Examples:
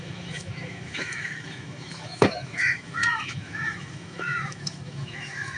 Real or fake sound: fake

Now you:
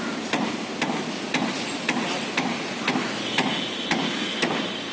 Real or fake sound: real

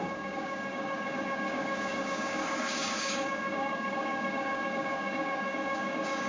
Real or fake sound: fake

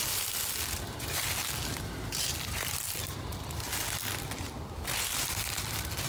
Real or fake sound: real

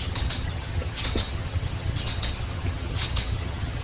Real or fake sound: fake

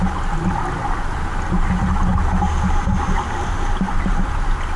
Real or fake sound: real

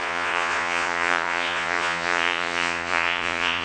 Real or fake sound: fake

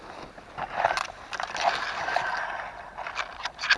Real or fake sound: real